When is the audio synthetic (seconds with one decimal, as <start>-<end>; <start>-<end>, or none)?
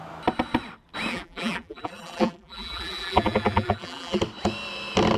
1.1-4.2